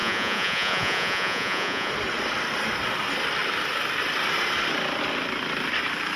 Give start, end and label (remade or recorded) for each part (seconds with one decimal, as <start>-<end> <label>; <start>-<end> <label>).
0.0-1.9 remade; 1.9-6.2 recorded